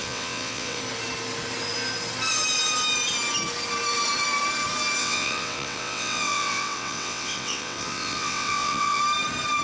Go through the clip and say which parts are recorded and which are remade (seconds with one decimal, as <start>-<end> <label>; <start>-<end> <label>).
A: 0.0-0.8 remade; 0.8-5.0 recorded; 5.0-9.0 remade; 9.0-9.6 recorded

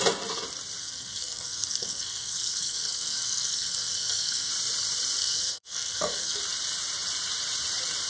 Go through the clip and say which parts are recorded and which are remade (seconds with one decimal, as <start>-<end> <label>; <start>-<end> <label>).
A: 0.0-0.8 recorded; 0.8-4.5 remade; 4.5-5.2 recorded; 5.2-6.4 remade; 6.4-8.1 recorded